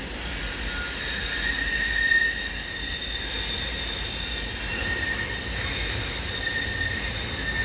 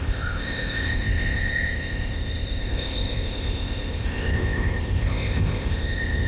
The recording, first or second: first